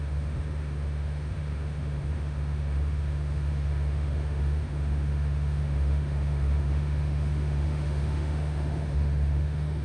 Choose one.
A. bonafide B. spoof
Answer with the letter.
B